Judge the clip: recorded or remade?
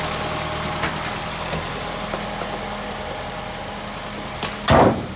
recorded